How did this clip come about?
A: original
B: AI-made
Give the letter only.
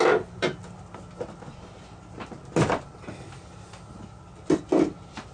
A